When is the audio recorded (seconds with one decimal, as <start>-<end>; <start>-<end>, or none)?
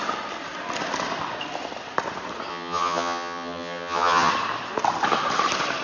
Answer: 0.0-2.5; 4.3-5.8